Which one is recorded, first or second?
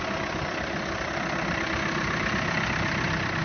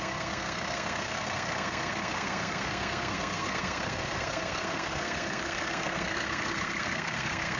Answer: first